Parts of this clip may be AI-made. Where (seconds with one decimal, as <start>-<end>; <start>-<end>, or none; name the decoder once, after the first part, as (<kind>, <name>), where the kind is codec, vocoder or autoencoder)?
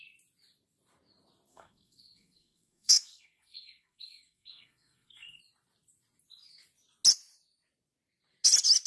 1.5-5.4 (codec, SNAC)